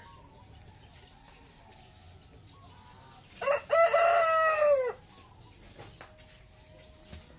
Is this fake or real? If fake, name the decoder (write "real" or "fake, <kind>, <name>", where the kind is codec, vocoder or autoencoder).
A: real